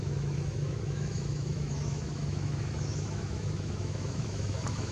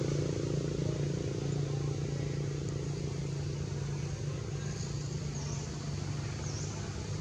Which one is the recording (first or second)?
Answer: second